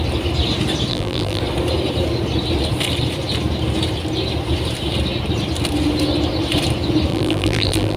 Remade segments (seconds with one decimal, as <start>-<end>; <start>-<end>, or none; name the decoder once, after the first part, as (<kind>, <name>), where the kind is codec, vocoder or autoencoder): 0.9-1.4 (vocoder, BigVGAN v2); 7.1-8.0